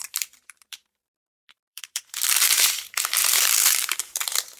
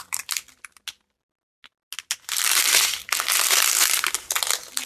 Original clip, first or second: second